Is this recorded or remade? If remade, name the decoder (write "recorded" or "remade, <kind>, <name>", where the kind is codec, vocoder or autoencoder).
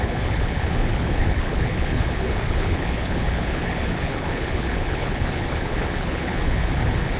remade, codec, HILCodec